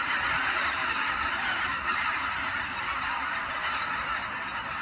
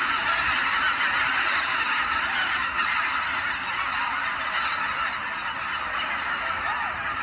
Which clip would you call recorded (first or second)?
second